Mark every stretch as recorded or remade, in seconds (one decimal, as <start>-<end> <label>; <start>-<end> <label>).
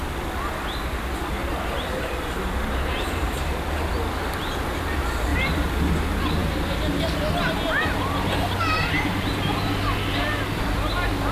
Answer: 0.0-1.4 recorded; 1.4-3.7 remade; 3.7-5.3 recorded; 5.3-5.9 remade; 5.9-11.3 recorded